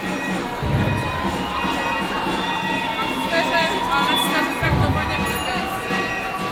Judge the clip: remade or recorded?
recorded